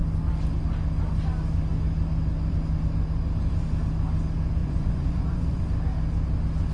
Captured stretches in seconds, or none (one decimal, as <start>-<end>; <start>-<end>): 0.0-4.6; 5.6-6.7